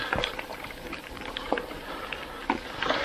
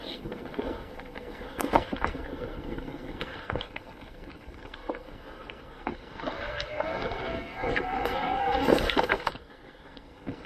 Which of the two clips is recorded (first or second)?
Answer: first